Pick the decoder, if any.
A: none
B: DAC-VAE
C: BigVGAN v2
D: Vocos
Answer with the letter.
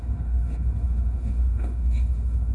B